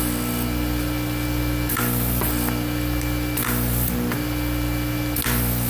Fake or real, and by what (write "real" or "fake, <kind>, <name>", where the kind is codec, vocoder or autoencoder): real